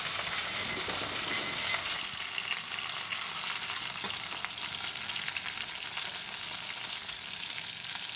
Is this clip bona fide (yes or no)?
yes